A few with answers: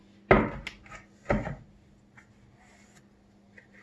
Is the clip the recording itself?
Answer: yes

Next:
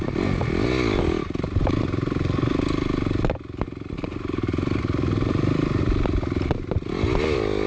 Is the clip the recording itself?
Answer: yes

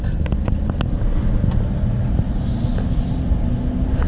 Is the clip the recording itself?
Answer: yes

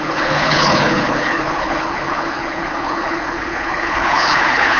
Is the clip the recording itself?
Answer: no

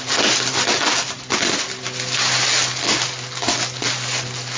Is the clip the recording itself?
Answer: yes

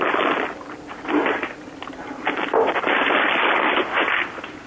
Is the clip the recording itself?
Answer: yes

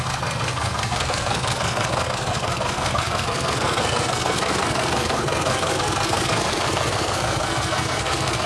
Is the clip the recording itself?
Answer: no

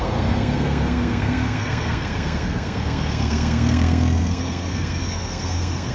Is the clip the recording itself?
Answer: no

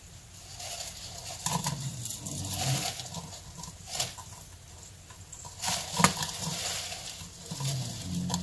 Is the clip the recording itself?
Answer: yes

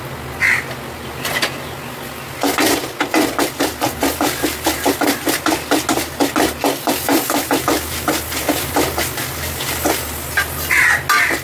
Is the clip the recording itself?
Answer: yes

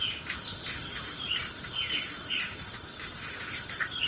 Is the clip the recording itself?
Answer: yes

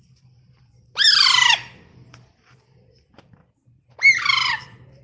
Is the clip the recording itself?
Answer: yes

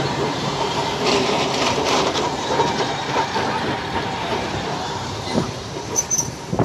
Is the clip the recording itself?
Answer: no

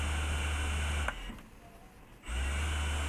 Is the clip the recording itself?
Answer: yes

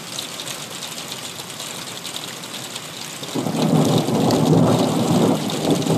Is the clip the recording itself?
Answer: yes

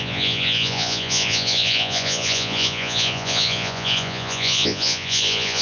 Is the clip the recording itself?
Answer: no